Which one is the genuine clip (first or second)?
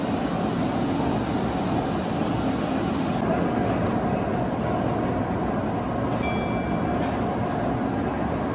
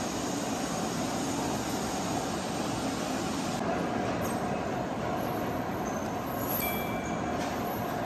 first